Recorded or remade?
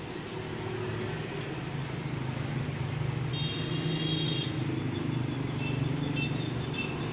recorded